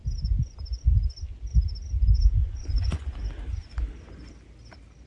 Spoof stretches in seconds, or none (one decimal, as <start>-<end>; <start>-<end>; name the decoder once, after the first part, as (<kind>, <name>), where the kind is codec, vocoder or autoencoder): 2.4-3.2 (vocoder, Vocos)